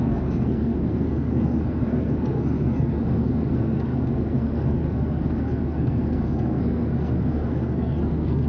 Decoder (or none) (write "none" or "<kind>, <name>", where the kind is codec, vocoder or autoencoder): codec, SNAC